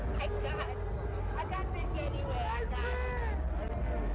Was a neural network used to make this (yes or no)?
no